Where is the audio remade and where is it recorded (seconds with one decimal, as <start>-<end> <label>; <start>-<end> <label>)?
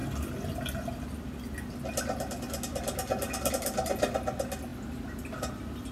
0.0-5.9 recorded